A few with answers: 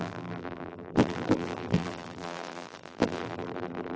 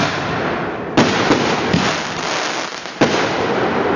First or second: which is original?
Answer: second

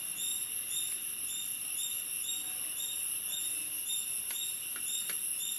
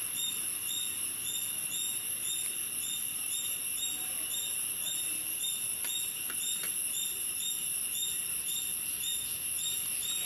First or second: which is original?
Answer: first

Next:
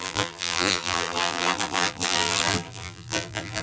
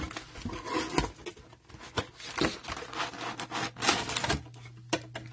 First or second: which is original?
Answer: second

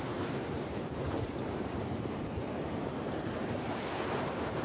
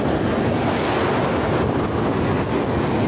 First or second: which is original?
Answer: second